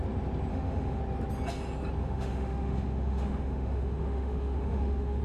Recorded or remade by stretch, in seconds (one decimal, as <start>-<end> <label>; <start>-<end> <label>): 0.0-0.5 recorded; 0.5-1.0 remade; 1.0-2.0 recorded; 2.0-5.2 remade